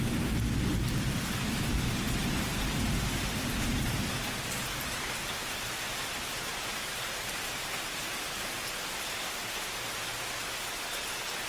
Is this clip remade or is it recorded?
recorded